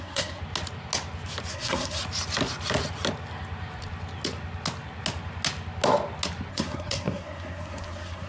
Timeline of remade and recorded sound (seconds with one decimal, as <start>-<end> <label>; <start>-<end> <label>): 0.0-0.4 remade; 0.4-1.5 recorded; 1.5-2.0 remade; 2.0-6.5 recorded; 6.5-8.3 remade